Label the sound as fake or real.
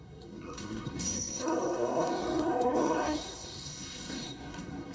fake